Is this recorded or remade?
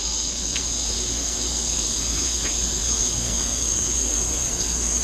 remade